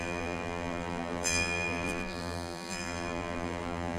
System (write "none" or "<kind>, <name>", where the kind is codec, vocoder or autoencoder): vocoder, BigVGAN v2